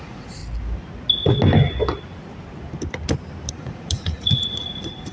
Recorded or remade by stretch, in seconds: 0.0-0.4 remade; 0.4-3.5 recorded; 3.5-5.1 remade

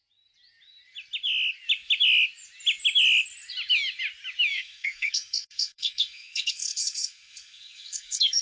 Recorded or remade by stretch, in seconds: 0.0-4.5 recorded; 4.5-8.4 remade